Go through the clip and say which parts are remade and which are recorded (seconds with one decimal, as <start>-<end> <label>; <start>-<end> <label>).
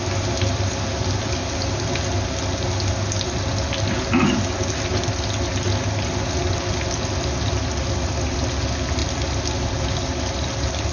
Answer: 0.0-10.9 recorded